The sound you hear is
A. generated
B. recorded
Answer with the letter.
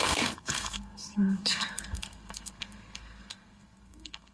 A